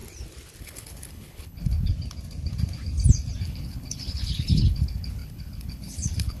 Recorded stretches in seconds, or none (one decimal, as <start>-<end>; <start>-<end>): 0.0-0.6; 1.9-3.4